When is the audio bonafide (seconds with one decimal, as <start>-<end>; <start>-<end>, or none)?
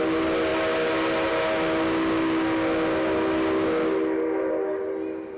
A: 0.0-5.4